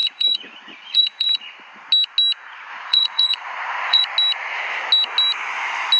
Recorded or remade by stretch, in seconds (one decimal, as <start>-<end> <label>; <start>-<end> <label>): 0.0-1.8 remade; 1.8-2.7 recorded; 2.7-4.0 remade; 4.0-6.0 recorded